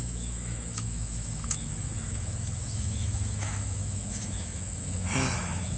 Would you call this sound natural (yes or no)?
no